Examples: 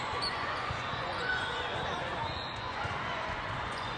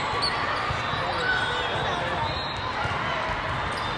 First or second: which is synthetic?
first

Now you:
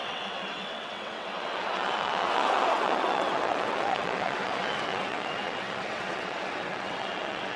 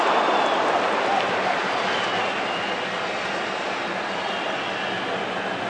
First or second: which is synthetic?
first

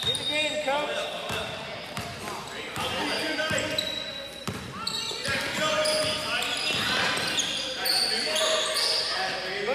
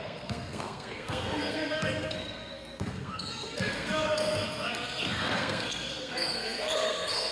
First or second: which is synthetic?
second